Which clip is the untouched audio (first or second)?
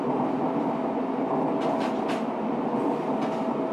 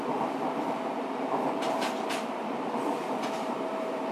first